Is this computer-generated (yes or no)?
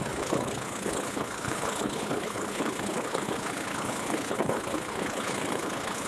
yes